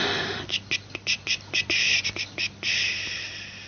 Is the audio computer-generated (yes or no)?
no